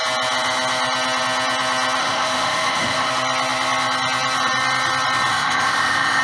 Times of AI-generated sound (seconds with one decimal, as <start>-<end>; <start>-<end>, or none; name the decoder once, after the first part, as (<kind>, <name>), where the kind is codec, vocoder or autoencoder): 2.0-3.1 (autoencoder, DAC-VAE); 5.3-6.2